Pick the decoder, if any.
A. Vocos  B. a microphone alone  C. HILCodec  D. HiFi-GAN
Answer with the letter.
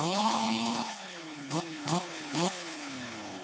C